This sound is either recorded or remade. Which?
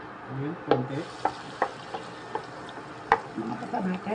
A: recorded